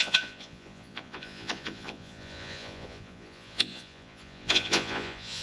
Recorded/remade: remade